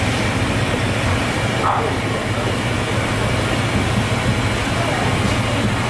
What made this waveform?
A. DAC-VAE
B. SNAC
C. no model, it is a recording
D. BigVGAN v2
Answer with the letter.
C